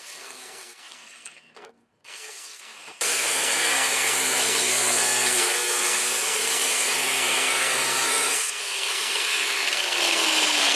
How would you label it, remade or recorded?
remade